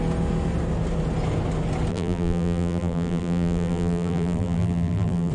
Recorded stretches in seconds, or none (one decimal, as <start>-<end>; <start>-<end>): 0.0-1.9